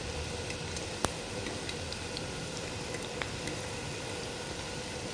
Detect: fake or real real